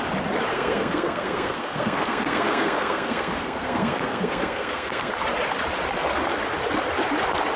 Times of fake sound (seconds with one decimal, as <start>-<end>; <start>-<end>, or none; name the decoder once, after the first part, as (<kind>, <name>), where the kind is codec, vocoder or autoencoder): 0.5-5.1 (codec, SNAC)